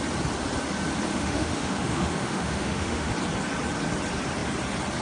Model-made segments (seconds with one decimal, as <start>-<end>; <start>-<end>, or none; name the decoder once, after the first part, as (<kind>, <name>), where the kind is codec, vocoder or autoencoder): 1.1-3.1 (autoencoder, DAC-VAE)